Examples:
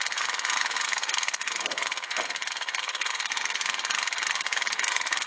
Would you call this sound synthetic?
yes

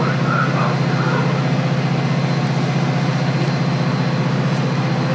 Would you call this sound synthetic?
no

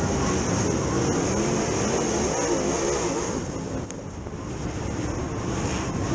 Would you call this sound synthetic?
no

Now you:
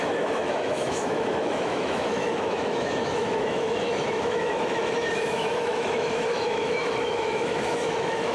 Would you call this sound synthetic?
yes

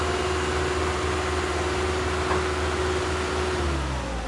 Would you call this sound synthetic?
no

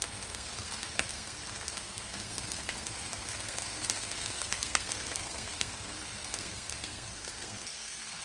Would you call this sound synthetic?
yes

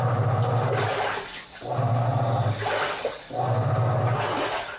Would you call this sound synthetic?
no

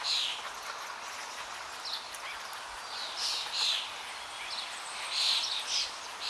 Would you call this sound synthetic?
no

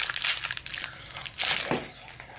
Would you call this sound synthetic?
no